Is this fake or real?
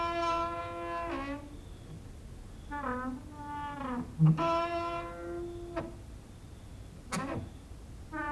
real